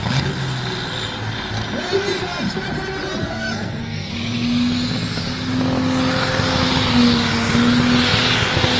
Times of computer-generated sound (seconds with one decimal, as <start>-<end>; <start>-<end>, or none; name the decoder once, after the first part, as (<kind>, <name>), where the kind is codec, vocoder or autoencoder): 3.2-4.1 (codec, SNAC)